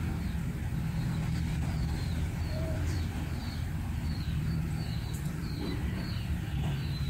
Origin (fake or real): fake